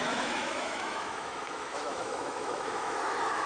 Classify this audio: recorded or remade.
remade